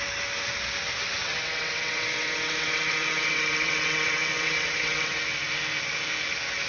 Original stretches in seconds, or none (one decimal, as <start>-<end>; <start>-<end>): 0.0-1.2; 5.2-6.7